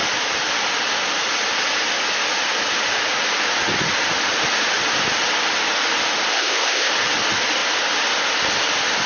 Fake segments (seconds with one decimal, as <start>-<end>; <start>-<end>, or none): 6.3-6.9